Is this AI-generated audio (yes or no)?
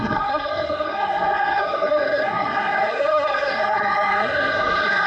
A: yes